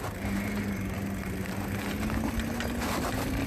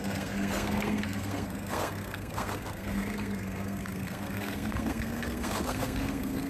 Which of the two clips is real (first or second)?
first